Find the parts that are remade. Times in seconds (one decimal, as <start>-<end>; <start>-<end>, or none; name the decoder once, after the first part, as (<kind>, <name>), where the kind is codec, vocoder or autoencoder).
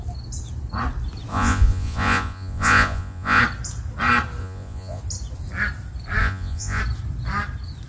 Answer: 1.3-3.4 (vocoder, Vocos); 4.4-5.0; 6.2-6.8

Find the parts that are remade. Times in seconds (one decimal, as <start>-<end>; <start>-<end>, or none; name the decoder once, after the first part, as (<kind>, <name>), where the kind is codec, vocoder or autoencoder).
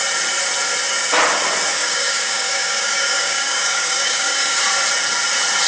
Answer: 1.7-4.6 (codec, DAC)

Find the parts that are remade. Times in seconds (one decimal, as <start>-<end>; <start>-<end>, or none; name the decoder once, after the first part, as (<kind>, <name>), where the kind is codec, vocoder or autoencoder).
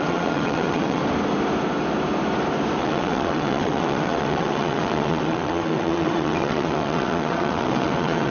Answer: 0.0-1.0 (vocoder, WaveNeXt); 2.8-8.3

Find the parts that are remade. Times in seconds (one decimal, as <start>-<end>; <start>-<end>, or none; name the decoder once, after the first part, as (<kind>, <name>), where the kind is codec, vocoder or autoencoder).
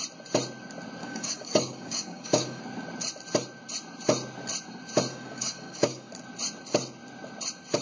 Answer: 1.0-2.6 (codec, DAC); 5.1-6.1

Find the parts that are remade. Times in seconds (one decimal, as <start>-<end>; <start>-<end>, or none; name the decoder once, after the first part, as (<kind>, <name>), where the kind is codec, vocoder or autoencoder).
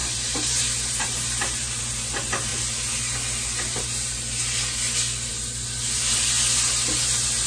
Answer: 0.0-1.8 (vocoder, BigVGAN v2)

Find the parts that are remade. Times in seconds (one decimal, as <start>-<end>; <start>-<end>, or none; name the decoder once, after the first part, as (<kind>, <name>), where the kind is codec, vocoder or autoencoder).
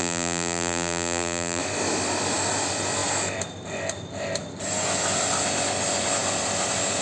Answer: 0.0-1.6 (vocoder, BigVGAN v2)